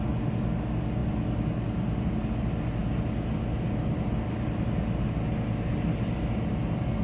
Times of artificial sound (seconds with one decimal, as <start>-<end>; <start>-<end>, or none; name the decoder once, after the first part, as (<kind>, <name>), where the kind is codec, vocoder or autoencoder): none